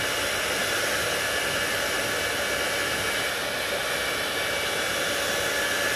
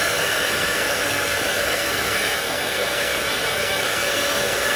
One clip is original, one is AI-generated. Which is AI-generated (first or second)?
second